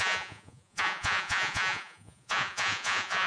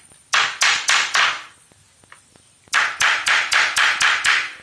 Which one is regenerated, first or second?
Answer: first